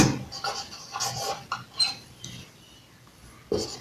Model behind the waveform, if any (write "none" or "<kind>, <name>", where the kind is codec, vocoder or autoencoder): none